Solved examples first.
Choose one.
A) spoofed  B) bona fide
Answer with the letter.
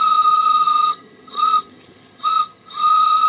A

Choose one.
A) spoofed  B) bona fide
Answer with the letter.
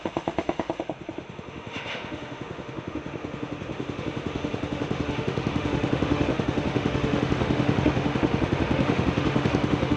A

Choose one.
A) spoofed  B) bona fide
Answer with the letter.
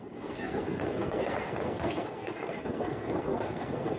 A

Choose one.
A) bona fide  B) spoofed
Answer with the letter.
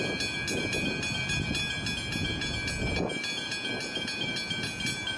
A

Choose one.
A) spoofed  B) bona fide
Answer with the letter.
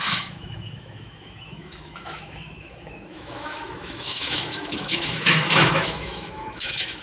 A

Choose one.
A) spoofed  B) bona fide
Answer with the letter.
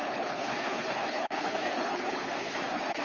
A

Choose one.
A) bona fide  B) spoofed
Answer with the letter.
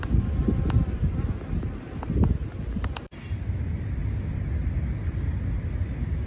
A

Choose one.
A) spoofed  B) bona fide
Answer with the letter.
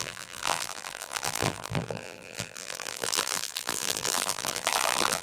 A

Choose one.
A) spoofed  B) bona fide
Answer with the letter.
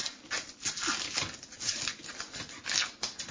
B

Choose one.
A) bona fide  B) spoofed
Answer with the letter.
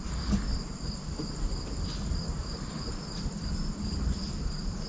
A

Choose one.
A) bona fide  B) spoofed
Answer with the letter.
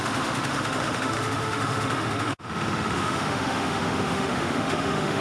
B